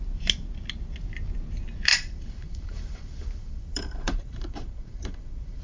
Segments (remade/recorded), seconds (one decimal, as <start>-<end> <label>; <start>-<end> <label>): 0.0-1.9 recorded; 1.9-5.6 remade